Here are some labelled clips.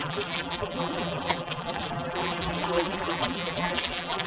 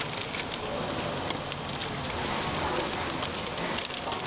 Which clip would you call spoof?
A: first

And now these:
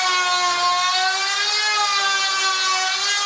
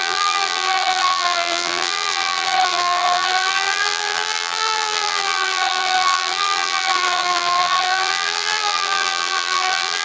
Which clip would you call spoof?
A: second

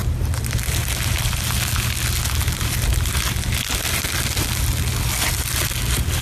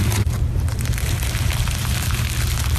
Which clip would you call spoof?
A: second